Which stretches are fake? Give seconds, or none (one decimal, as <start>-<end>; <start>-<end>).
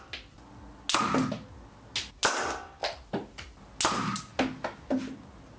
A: none